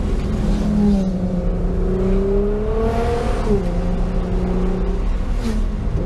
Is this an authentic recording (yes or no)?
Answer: yes